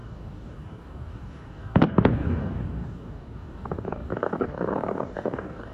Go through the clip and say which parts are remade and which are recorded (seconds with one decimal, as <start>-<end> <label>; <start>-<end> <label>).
0.0-5.7 remade

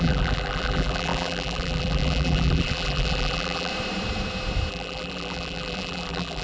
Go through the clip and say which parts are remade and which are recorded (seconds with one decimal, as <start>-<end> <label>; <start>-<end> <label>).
0.0-3.7 remade; 3.7-4.7 recorded; 4.7-6.4 remade

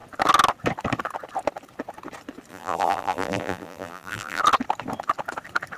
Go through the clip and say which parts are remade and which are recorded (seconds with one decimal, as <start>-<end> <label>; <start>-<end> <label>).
0.0-2.5 recorded; 2.5-4.4 remade; 4.4-5.8 recorded

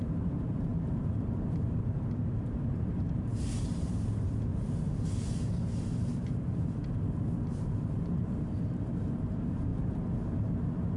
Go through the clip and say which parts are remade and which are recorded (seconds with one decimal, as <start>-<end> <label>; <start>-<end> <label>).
0.0-9.7 remade; 9.7-11.0 recorded

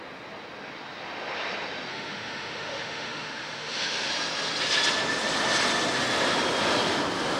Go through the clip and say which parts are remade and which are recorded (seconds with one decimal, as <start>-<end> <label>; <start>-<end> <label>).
0.0-1.9 recorded; 1.9-4.1 remade; 4.1-7.4 recorded

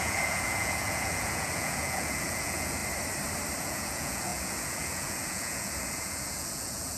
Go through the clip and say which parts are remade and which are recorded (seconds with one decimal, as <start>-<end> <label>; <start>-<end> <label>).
0.0-2.8 remade; 2.8-3.6 recorded; 3.6-7.0 remade